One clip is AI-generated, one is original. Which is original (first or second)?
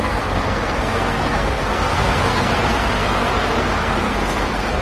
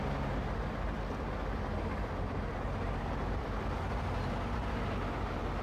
second